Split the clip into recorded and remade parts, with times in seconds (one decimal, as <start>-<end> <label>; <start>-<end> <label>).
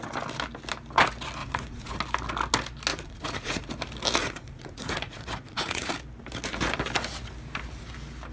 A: 0.0-1.4 recorded; 1.4-2.0 remade; 2.0-2.9 recorded; 2.9-3.7 remade; 3.7-4.2 recorded; 4.2-5.9 remade; 5.9-8.3 recorded